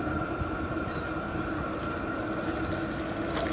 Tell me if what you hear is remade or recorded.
recorded